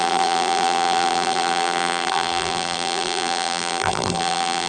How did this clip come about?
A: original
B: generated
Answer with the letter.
B